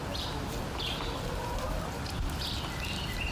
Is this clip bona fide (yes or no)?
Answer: yes